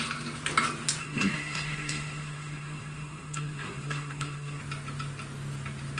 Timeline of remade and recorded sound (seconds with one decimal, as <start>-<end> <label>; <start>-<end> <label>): 0.0-1.0 recorded; 1.0-4.6 remade; 4.6-6.0 recorded